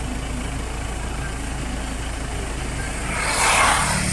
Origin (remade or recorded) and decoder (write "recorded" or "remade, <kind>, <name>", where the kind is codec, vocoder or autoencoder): recorded